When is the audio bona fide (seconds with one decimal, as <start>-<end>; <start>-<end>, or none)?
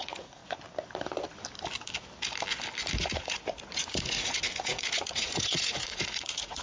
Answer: 0.4-3.0